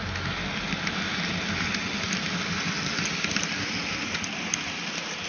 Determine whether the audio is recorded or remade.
recorded